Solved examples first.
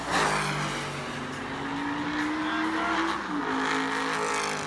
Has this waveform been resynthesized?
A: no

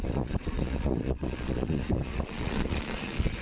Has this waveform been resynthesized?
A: yes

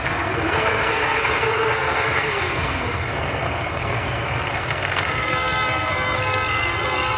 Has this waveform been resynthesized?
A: yes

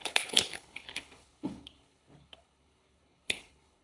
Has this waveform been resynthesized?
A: yes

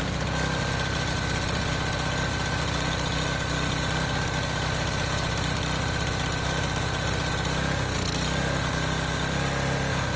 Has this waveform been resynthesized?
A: no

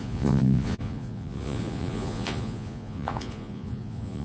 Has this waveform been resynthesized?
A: yes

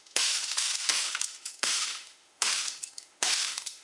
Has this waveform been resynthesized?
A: yes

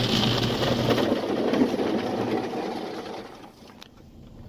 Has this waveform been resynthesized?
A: no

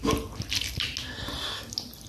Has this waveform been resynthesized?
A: no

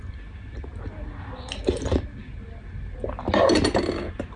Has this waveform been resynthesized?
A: no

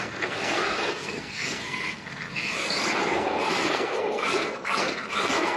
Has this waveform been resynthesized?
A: yes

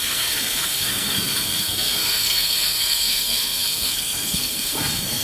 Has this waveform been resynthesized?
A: yes